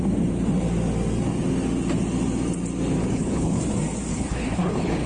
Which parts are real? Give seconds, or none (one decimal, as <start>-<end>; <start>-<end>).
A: 0.0-3.0; 3.6-4.1